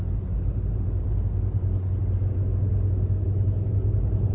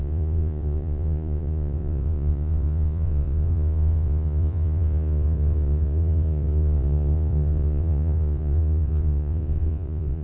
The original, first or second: first